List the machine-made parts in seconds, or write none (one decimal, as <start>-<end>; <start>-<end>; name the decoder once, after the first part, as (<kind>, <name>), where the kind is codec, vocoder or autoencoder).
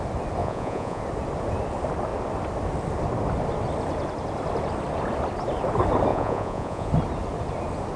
0.4-1.0 (vocoder, Vocos); 6.1-6.9